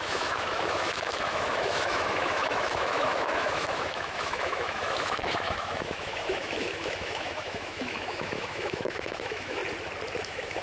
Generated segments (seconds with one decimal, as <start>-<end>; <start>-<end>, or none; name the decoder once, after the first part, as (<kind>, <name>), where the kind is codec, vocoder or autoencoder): 0.0-9.6 (autoencoder, DAC-VAE); 10.2-10.6